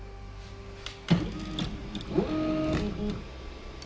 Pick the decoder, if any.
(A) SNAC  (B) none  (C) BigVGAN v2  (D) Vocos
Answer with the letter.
B